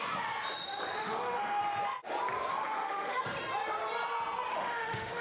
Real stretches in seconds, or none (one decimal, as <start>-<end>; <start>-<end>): 0.0-1.0; 1.6-2.5; 3.2-4.5